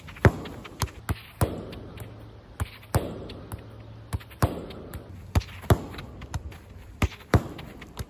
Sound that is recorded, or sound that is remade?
recorded